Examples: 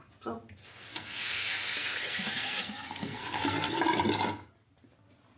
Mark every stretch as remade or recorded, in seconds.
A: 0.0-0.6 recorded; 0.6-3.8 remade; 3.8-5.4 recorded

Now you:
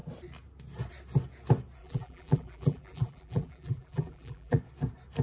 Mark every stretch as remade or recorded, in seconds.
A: 0.0-1.8 recorded; 1.8-4.6 remade; 4.6-5.2 recorded

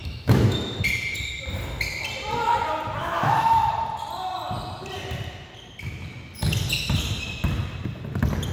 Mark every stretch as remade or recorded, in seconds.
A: 0.0-0.8 remade; 0.8-3.0 recorded; 3.0-3.7 remade; 3.7-8.5 recorded

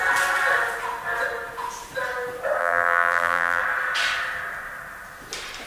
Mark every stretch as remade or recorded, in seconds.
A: 0.0-2.6 recorded; 2.6-3.6 remade; 3.6-5.7 recorded